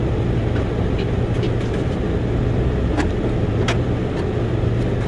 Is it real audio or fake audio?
real